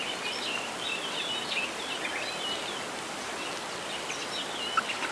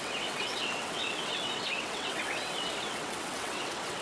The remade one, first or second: second